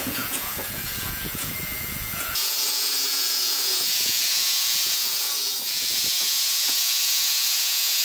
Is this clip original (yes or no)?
no